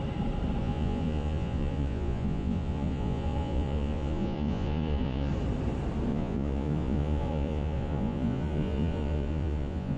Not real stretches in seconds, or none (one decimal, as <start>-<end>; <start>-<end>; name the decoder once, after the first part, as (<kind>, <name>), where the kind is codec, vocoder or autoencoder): 0.6-5.3 (vocoder, Vocos); 6.1-10.0